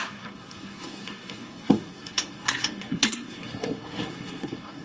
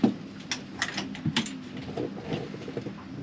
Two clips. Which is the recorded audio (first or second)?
second